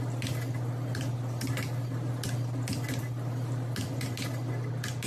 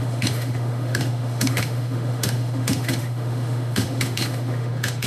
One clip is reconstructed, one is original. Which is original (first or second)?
first